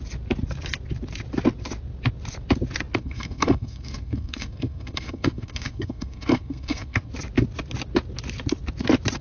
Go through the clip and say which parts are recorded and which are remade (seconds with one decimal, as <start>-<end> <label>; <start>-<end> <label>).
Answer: 0.0-3.0 recorded; 3.0-7.1 remade; 7.1-9.2 recorded